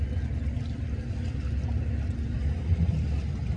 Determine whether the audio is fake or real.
real